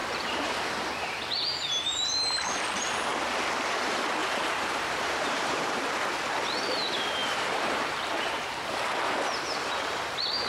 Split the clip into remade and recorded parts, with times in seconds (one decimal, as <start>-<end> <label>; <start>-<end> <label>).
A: 0.0-1.2 remade; 1.2-4.2 recorded; 4.2-5.9 remade; 5.9-7.2 recorded; 7.2-8.5 remade; 8.5-10.5 recorded